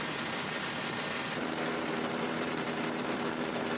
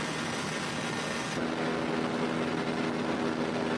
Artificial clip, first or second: first